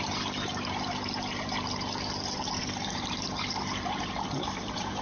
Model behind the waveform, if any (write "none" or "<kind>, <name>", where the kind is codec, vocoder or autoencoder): vocoder, BigVGAN v2